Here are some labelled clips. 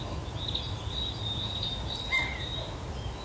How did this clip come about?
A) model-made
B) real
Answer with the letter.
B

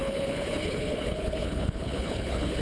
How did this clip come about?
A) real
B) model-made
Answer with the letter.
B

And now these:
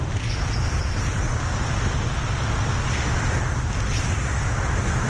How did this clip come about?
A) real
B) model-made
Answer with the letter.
A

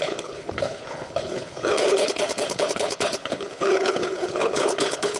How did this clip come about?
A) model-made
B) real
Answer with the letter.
A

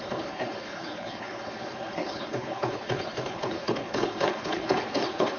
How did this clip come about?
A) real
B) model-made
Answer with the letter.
B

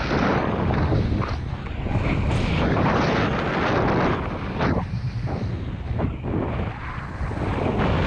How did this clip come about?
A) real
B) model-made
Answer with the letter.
A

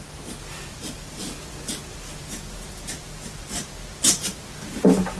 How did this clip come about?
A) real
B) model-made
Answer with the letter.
A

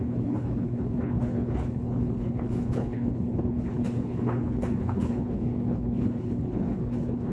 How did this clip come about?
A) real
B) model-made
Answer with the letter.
B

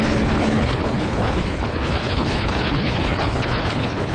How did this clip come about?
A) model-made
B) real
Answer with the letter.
A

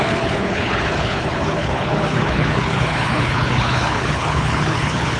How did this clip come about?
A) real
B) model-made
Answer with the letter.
B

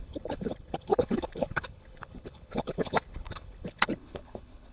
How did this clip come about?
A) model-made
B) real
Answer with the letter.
A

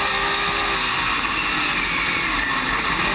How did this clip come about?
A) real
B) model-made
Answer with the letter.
A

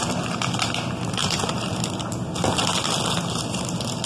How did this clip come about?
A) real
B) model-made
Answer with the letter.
A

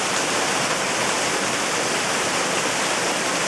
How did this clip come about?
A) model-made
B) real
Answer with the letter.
B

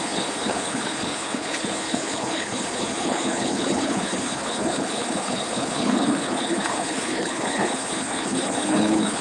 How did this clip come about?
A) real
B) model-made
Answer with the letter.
B